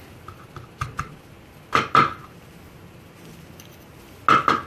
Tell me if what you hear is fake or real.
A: real